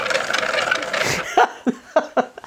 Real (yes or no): yes